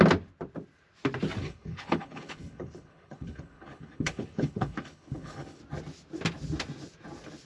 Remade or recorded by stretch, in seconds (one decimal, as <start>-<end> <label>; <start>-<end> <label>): 0.0-1.4 recorded; 1.4-5.6 remade; 5.6-7.5 recorded